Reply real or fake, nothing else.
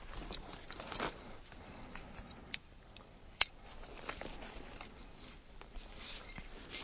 real